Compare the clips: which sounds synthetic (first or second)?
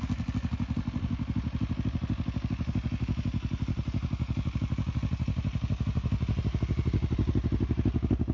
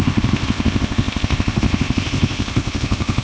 second